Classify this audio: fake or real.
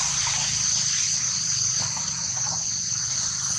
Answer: fake